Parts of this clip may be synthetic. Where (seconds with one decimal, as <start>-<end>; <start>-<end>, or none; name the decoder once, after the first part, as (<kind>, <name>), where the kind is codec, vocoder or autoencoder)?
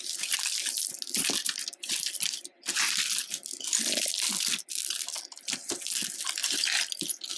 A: 1.2-1.9 (vocoder, BigVGAN v2); 6.4-7.4